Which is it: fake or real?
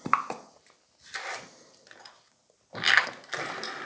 real